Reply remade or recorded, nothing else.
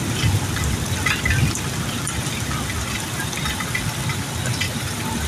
recorded